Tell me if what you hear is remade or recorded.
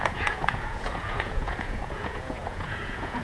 remade